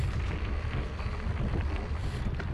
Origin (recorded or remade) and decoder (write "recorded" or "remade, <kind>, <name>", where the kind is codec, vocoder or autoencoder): recorded